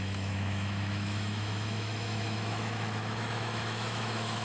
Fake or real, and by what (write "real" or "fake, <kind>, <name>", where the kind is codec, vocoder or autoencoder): fake, autoencoder, DAC-VAE